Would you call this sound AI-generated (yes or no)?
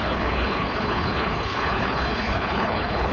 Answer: yes